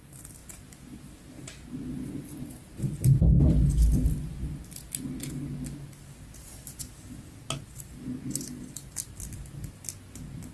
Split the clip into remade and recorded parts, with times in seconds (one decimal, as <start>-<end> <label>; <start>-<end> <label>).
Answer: 0.0-10.5 recorded